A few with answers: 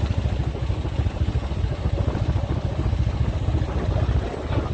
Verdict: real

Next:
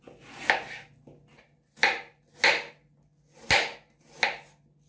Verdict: real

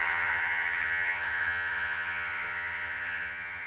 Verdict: fake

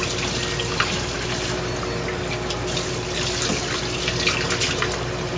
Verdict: real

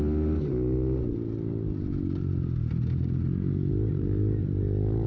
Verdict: real